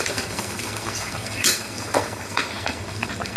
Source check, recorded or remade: remade